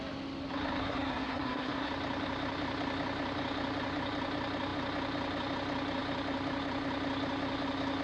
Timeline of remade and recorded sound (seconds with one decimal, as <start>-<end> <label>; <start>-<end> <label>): 0.0-0.8 recorded; 0.8-1.9 remade; 1.9-8.0 recorded

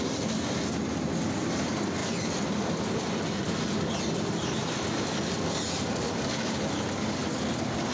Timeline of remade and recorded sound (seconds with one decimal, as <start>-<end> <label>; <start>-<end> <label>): 0.0-2.0 recorded; 2.0-6.7 remade; 6.7-7.2 recorded; 7.2-7.9 remade

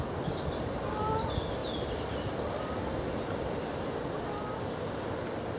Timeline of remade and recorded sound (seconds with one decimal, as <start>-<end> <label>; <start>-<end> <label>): 0.0-5.6 recorded

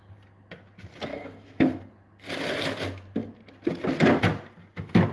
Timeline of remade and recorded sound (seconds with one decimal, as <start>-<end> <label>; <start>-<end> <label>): 0.0-1.1 recorded; 1.1-1.9 remade; 1.9-5.1 recorded